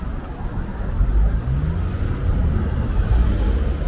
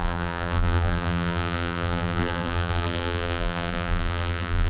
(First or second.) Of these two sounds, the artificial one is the second